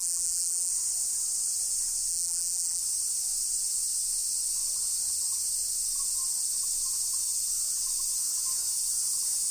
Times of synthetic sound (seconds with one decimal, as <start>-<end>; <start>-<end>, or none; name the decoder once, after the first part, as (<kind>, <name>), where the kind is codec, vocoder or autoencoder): 0.0-0.7 (vocoder, BigVGAN v2); 2.1-2.8